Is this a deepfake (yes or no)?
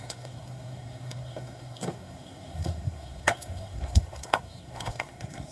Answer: yes